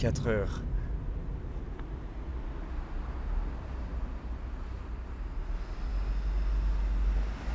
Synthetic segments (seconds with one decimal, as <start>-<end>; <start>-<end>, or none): none